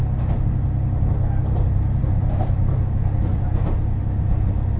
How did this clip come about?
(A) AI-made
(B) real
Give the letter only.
B